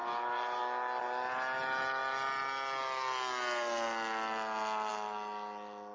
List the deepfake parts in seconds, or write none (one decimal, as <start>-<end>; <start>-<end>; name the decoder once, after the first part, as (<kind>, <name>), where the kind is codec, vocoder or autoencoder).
0.0-0.6 (vocoder, BigVGAN v2)